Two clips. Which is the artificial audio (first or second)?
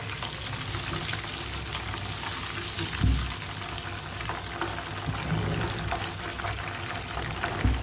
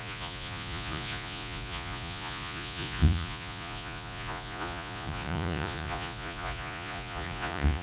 second